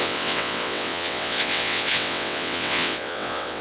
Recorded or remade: remade